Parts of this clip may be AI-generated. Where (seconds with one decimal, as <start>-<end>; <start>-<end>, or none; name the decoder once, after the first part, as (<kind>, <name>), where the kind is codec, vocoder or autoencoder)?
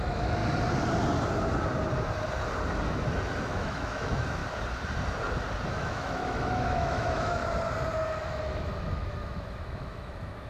0.0-0.4 (autoencoder, DAC-VAE); 3.4-4.4; 5.7-7.4; 8.2-10.5